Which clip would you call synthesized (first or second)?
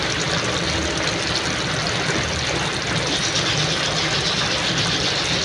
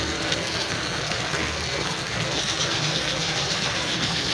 second